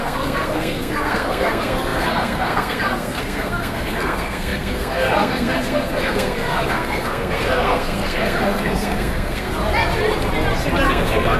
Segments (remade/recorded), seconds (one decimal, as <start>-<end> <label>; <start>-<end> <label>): 0.0-9.5 remade; 9.5-10.9 recorded; 10.9-11.4 remade